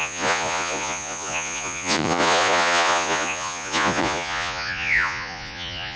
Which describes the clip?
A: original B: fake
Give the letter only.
B